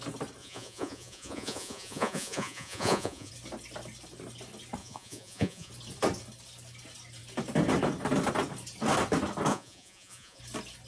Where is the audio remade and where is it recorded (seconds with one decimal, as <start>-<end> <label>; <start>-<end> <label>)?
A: 0.0-0.4 recorded; 0.4-3.3 remade; 3.3-4.8 recorded; 4.8-5.7 remade; 5.7-9.5 recorded; 9.5-10.4 remade; 10.4-10.9 recorded